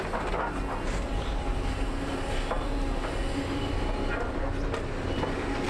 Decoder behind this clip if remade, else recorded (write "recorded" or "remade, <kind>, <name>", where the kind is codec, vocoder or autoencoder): recorded